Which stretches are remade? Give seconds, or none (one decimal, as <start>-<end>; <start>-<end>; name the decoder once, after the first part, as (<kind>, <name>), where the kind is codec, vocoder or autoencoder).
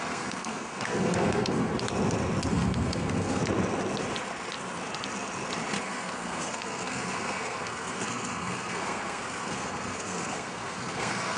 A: 0.0-1.7 (codec, SNAC); 2.5-3.4; 5.8-11.4